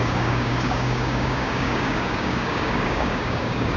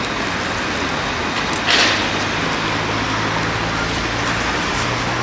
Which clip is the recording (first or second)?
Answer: second